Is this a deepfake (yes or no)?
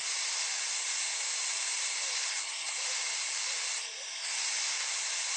no